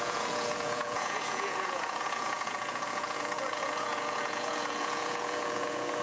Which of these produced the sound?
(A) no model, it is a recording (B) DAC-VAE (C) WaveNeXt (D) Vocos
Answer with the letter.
D